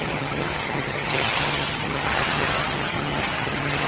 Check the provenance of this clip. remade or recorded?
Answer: remade